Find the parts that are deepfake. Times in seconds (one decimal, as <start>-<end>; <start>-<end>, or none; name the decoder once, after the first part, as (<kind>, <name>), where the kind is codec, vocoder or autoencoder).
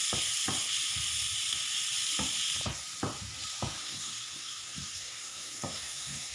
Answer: 3.8-6.3 (codec, SNAC)